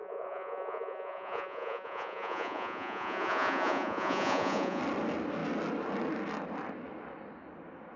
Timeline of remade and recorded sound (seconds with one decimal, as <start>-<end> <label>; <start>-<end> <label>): 0.0-4.8 remade; 4.8-8.0 recorded